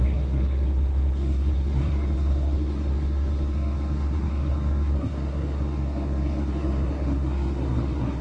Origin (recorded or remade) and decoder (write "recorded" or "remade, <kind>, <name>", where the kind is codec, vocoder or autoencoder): remade, codec, SNAC